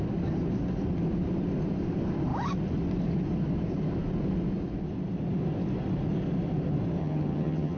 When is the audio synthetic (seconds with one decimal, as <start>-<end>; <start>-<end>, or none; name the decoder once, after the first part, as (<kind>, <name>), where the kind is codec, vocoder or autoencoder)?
7.0-7.8 (vocoder, HiFi-GAN)